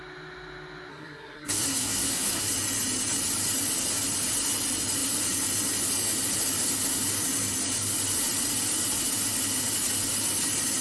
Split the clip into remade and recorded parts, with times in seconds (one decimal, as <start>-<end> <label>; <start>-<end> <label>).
0.0-0.9 recorded; 0.9-2.5 remade; 2.5-10.8 recorded